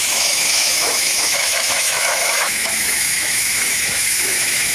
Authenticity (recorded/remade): remade